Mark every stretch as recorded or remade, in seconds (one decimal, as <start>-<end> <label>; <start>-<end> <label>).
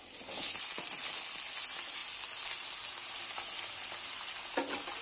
0.0-5.0 recorded